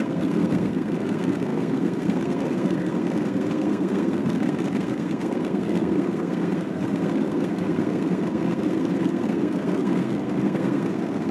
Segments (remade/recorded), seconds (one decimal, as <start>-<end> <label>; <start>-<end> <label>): 0.0-11.3 remade